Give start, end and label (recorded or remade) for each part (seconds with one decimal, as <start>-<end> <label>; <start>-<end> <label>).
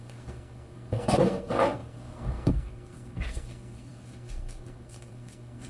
0.0-5.7 remade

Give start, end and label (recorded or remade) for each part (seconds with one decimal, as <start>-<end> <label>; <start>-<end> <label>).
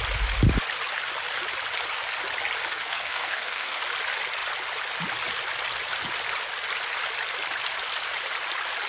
0.0-2.7 recorded; 2.7-3.8 remade; 3.8-8.9 recorded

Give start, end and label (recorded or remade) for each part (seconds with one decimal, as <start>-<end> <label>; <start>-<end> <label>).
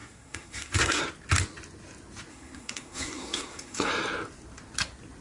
0.0-1.0 remade; 1.0-2.3 recorded; 2.3-3.9 remade; 3.9-5.2 recorded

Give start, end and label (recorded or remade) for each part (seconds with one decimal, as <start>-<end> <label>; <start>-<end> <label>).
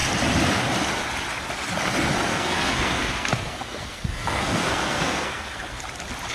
0.0-2.3 recorded; 2.3-5.8 remade; 5.8-6.3 recorded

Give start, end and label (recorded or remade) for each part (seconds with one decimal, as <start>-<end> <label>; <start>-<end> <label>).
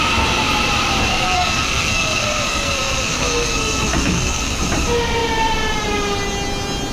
0.0-1.1 recorded; 1.1-4.6 remade; 4.6-6.9 recorded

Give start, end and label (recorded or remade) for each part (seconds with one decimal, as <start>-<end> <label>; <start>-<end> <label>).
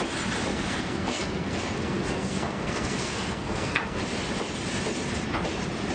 0.0-0.5 recorded; 0.5-4.0 remade; 4.0-5.9 recorded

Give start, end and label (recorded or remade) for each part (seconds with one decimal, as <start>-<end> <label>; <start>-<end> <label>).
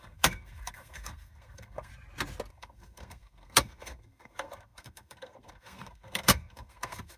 0.0-1.9 remade; 1.9-2.5 recorded; 2.5-7.2 remade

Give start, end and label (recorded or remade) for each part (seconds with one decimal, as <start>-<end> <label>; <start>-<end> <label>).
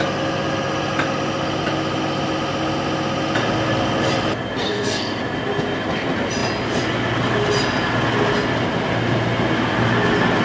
0.0-4.6 recorded; 4.6-5.2 remade; 5.2-10.4 recorded